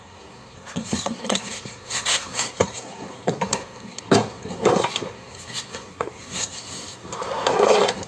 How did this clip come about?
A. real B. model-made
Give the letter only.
B